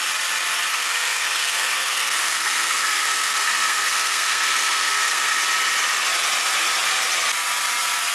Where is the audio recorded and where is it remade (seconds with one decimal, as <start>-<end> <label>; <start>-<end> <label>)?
0.0-0.7 recorded; 0.7-5.4 remade; 5.4-8.1 recorded